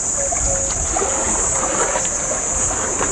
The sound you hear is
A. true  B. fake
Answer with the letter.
A